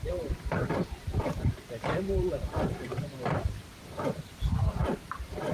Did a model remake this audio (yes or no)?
yes